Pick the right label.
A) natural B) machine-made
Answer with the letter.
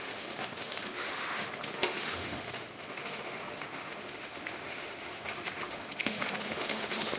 B